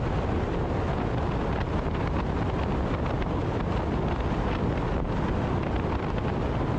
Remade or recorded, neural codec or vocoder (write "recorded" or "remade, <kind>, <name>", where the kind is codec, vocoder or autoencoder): recorded